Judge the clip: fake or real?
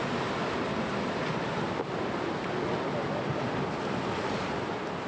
real